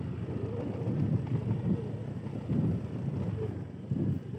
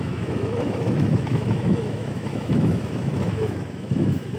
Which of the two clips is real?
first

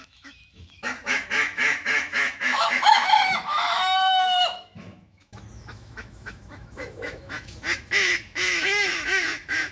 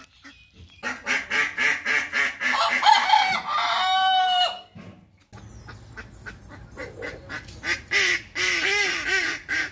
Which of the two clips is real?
second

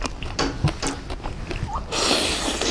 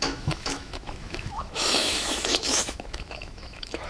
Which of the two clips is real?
first